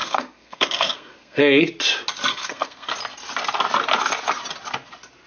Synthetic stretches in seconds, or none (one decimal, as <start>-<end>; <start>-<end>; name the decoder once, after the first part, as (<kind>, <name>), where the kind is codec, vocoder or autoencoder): 0.0-1.4 (codec, SNAC); 2.3-2.9